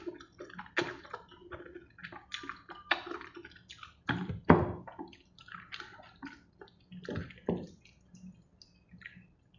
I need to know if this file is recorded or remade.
recorded